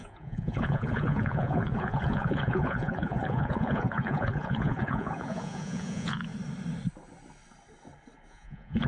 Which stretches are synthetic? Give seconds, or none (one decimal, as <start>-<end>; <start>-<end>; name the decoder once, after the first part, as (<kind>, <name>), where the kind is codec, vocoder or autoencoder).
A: 0.0-6.3 (vocoder, Vocos); 8.3-8.9